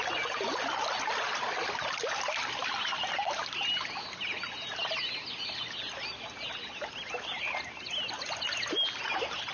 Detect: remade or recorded recorded